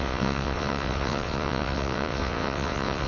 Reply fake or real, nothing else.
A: fake